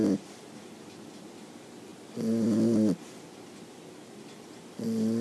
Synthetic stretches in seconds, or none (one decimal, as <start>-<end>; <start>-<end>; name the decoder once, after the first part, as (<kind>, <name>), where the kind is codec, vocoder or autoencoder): none